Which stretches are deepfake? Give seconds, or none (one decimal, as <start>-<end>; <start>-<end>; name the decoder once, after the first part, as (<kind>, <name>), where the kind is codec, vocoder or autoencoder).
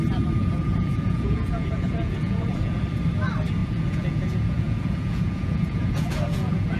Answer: 0.4-2.8 (vocoder, Vocos); 3.6-6.8